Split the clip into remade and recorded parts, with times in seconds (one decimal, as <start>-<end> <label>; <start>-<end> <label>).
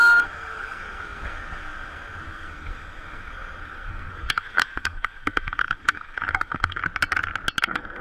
0.0-6.8 remade; 6.8-7.6 recorded; 7.6-8.0 remade